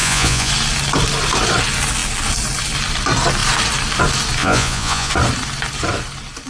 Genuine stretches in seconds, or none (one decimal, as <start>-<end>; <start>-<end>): 0.5-4.4; 5.1-6.5